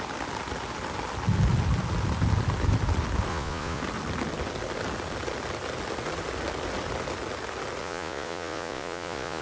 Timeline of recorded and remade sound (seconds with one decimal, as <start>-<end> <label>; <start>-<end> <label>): 0.0-3.3 recorded; 3.3-3.8 remade; 3.8-7.8 recorded; 7.8-9.4 remade